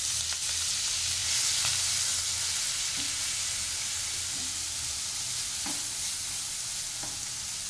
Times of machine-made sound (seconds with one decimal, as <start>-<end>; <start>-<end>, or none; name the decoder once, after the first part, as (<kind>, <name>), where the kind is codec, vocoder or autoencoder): none